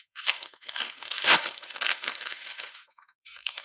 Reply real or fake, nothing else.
fake